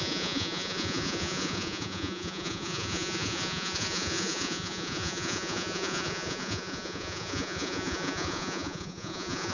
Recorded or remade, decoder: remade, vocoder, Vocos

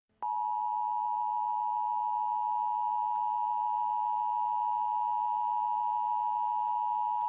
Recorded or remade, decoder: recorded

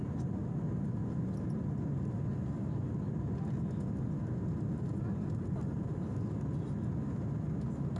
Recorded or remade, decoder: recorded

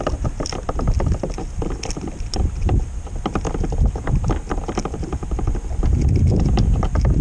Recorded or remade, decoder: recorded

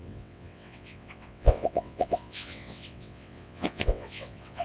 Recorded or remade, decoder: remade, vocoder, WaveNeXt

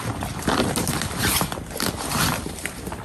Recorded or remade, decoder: recorded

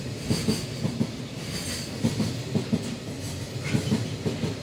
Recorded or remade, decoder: recorded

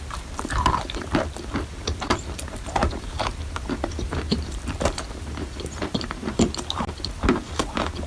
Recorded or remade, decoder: remade, vocoder, BigVGAN v2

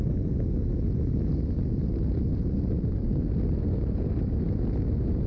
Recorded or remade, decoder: recorded